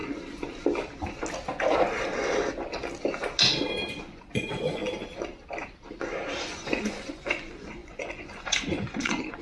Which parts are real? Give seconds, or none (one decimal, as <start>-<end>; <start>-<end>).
0.0-4.0; 4.8-6.4